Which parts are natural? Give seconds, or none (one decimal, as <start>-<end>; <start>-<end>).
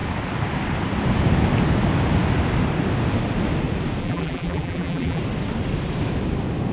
0.0-4.0; 5.2-6.7